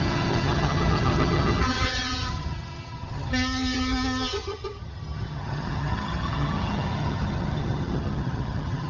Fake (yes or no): yes